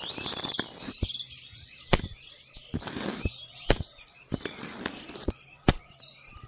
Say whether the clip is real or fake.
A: fake